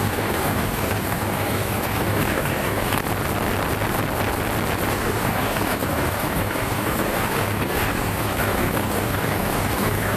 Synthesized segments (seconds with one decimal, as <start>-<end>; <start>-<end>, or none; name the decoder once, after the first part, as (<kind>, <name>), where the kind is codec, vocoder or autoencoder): 0.0-3.0 (codec, DAC); 4.9-10.2

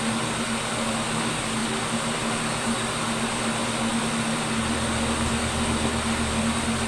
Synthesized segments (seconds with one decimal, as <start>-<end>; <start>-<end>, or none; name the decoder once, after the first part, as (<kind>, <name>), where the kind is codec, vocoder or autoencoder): none

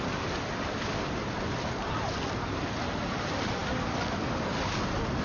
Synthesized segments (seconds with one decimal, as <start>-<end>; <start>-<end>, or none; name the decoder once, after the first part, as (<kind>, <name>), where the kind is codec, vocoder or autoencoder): none

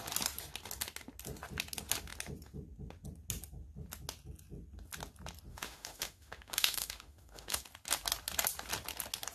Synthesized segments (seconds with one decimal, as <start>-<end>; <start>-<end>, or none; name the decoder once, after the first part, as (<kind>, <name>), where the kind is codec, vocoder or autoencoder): 5.5-7.6 (autoencoder, DAC-VAE)

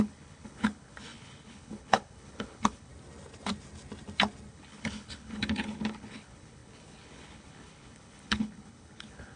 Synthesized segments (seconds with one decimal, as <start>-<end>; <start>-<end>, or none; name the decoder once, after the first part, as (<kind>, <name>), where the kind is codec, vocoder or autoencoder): 0.0-2.9 (codec, HILCodec); 4.5-9.4

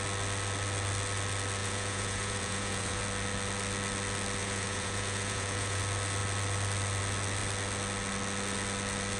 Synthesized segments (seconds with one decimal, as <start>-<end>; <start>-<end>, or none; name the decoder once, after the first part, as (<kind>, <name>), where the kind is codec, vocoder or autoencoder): 1.6-3.0 (vocoder, Vocos); 4.4-5.8

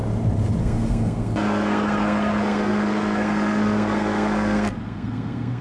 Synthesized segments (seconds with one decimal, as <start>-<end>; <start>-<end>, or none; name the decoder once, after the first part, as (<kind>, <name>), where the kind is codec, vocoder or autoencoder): 0.6-5.6 (codec, SNAC)